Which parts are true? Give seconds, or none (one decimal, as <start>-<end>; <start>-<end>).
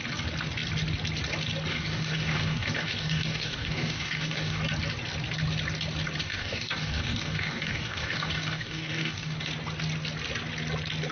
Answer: 0.0-1.7; 4.6-6.2; 9.5-11.1